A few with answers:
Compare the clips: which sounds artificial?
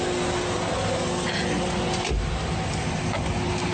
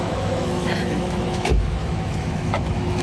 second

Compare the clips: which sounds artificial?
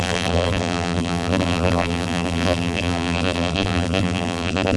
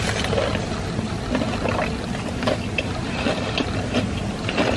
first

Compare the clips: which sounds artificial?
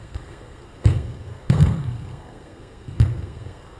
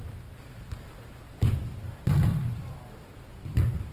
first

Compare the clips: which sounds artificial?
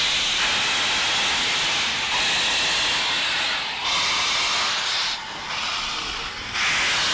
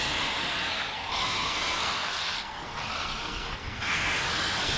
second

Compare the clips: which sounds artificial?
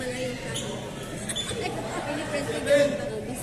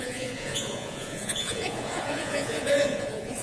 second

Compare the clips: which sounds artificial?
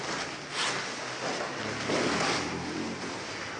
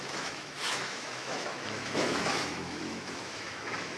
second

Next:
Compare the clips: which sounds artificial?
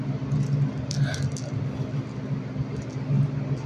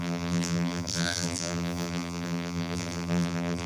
second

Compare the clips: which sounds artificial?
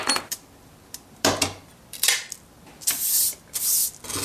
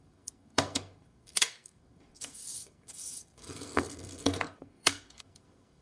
second